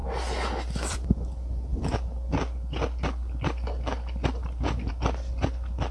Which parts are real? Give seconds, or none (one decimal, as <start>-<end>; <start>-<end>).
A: 0.0-5.9